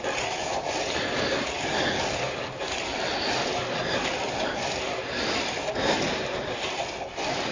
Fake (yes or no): yes